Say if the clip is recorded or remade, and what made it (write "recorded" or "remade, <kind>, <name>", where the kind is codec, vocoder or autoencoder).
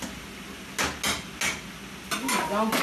recorded